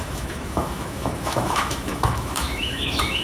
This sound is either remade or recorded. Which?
remade